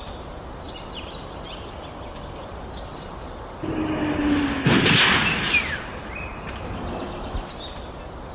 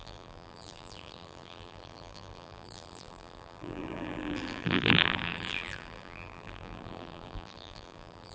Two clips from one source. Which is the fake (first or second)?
second